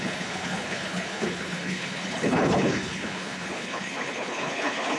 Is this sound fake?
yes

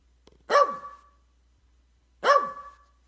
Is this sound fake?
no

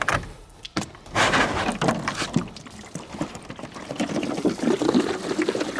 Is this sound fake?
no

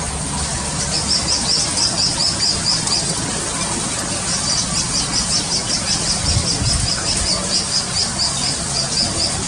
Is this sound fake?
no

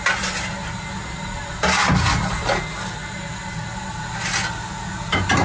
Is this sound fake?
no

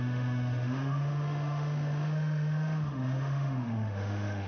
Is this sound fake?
yes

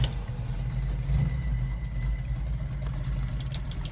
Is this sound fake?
no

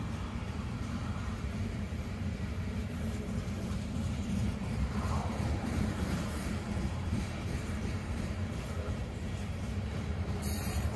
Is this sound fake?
yes